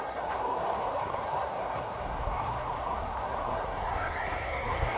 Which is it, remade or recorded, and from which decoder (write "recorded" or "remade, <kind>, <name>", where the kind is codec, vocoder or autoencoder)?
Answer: remade, codec, SNAC